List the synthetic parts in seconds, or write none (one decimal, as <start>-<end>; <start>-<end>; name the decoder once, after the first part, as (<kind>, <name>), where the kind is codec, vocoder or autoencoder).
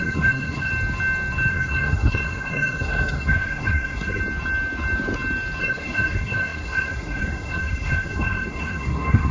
0.0-0.7 (codec, SNAC); 1.5-4.2; 5.6-9.3